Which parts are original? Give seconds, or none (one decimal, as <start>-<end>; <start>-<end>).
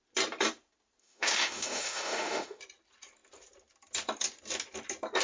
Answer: 0.0-1.0; 2.6-5.2